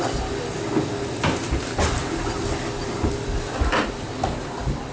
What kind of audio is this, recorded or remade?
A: recorded